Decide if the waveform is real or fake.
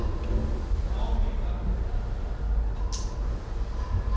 real